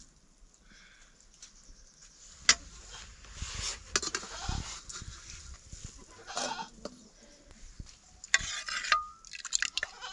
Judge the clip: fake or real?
real